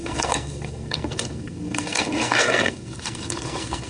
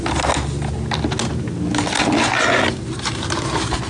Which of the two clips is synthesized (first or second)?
first